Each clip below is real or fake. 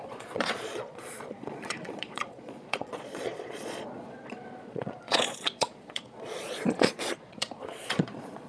fake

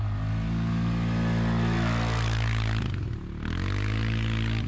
real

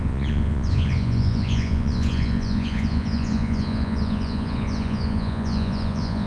fake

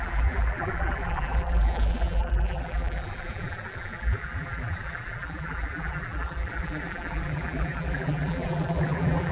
fake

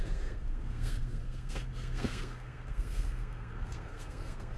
fake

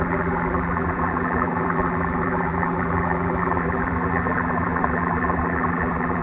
fake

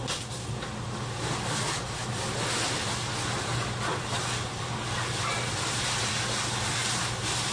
real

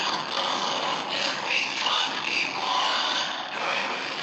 fake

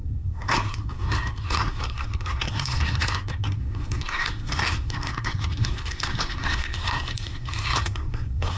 fake